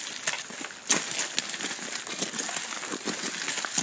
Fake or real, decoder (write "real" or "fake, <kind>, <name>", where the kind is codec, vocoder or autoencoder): real